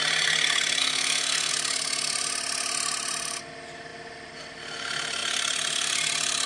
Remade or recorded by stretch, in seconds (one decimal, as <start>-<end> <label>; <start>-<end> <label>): 0.0-0.8 recorded; 0.8-1.5 remade; 1.5-6.5 recorded